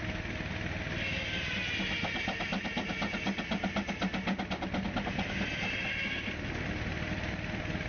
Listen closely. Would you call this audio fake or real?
real